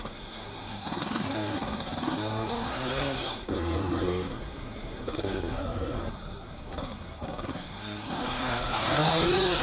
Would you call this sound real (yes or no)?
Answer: no